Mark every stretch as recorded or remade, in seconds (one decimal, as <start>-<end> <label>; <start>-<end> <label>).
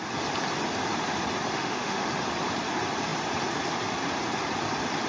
0.0-1.5 recorded; 1.5-2.1 remade; 2.1-5.1 recorded